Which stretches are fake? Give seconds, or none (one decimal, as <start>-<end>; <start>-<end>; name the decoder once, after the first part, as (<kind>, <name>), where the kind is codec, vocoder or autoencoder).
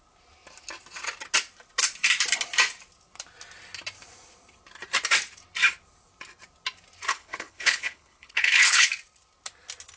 7.1-8.9 (codec, HILCodec)